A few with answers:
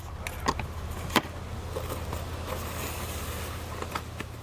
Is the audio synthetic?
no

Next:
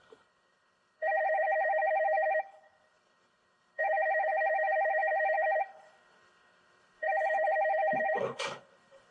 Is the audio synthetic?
yes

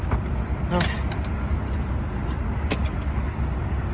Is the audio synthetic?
no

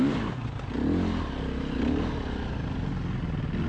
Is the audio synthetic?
no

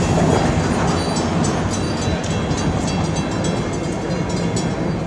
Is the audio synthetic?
no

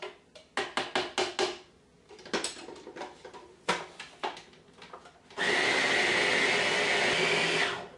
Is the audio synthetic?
no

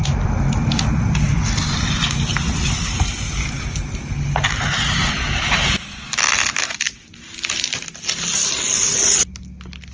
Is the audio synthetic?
no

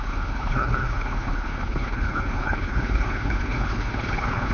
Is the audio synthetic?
yes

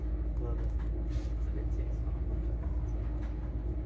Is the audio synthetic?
no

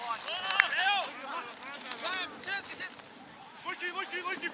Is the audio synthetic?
no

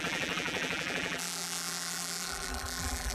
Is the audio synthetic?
yes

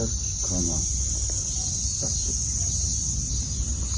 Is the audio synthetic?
no